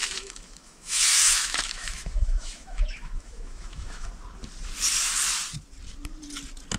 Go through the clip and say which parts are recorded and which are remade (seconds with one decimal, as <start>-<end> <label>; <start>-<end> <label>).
0.0-4.1 remade; 4.1-6.8 recorded